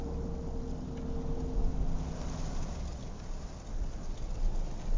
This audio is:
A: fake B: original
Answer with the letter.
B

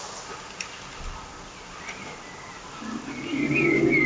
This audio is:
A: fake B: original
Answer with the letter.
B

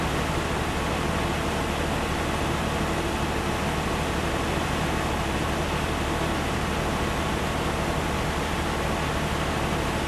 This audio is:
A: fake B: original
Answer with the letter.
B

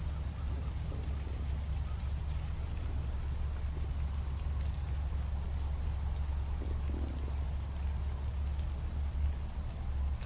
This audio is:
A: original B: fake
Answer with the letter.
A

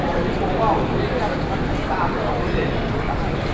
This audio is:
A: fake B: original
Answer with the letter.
B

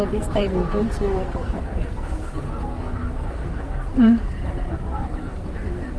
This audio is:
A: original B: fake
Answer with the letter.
B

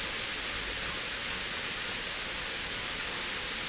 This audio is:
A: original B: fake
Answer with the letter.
A